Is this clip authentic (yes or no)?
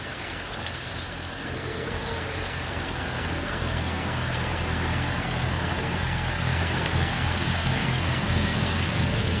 no